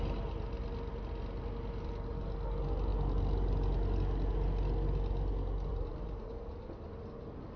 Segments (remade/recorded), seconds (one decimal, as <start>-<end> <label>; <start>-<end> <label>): 0.0-5.7 recorded; 5.7-6.3 remade; 6.3-7.6 recorded